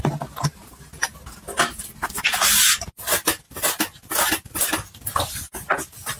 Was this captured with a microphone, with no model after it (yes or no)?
yes